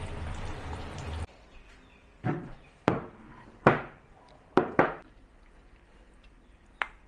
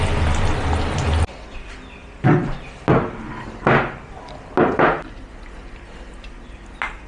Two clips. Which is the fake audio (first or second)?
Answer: first